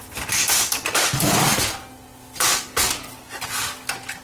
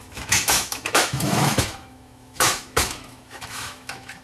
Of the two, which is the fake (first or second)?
second